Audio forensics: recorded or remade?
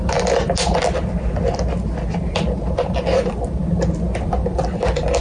recorded